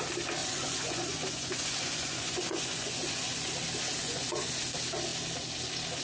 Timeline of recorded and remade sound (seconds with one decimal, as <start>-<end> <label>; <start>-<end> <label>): 0.0-0.4 recorded; 0.4-3.5 remade; 3.5-4.0 recorded; 4.0-4.5 remade; 4.5-6.0 recorded